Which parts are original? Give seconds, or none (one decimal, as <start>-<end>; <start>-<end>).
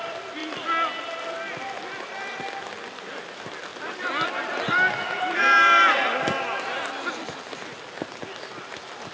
0.0-9.1